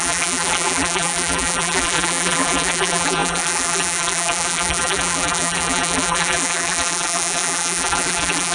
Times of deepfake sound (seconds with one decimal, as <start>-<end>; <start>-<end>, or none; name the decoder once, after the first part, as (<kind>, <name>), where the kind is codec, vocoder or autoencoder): 0.0-8.5 (vocoder, BigVGAN v2)